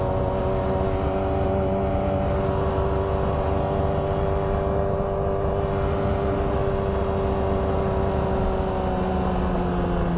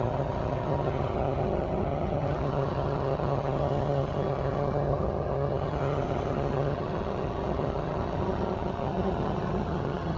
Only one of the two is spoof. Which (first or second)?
second